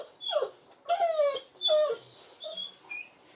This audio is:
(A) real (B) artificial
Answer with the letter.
A